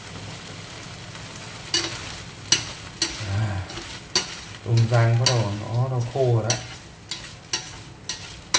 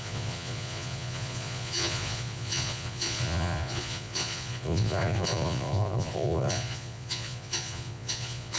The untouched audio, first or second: first